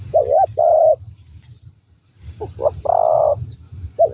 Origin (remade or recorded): recorded